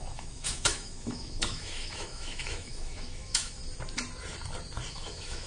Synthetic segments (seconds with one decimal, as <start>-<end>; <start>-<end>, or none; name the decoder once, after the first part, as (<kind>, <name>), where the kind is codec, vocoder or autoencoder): 0.0-3.6 (autoencoder, DAC-VAE); 4.9-5.5